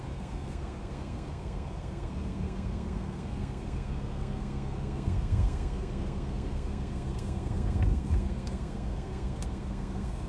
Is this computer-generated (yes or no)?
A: yes